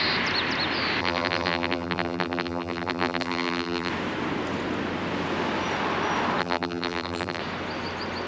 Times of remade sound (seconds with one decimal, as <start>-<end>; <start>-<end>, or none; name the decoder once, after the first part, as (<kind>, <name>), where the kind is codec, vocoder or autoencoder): 1.0-3.9 (vocoder, BigVGAN v2); 6.4-7.4